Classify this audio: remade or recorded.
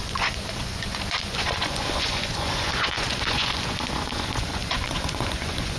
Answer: remade